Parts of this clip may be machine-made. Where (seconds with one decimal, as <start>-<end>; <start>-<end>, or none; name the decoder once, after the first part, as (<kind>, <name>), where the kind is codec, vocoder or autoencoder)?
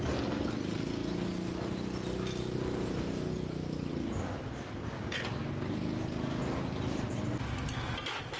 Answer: none